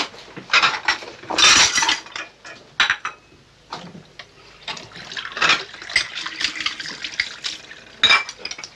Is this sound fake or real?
real